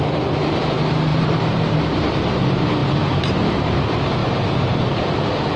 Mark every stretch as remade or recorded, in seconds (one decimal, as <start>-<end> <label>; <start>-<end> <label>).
0.0-1.1 recorded; 1.1-2.4 remade; 2.4-5.6 recorded